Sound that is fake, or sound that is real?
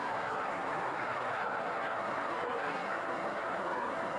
fake